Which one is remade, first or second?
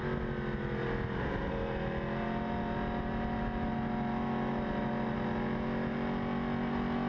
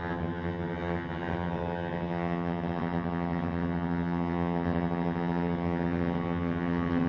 second